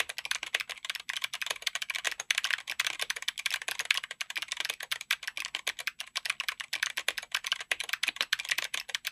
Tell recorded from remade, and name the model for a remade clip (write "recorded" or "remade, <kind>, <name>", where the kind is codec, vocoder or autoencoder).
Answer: recorded